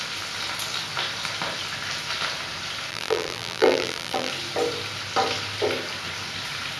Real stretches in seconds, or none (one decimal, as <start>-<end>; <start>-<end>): 0.0-2.9; 4.3-6.8